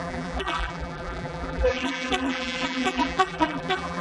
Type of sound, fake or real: fake